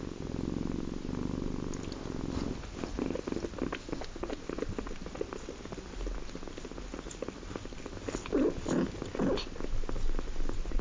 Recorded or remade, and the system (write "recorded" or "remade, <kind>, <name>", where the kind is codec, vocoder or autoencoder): recorded